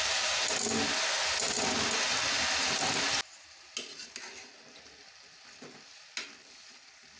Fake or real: real